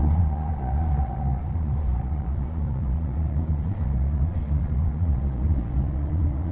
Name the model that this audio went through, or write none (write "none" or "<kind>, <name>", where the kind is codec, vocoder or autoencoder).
vocoder, Vocos